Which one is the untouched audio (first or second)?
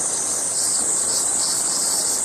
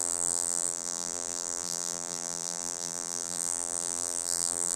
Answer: first